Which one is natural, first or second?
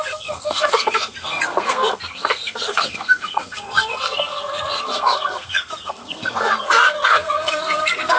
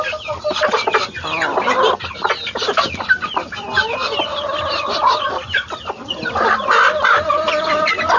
second